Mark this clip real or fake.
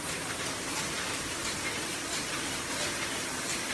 fake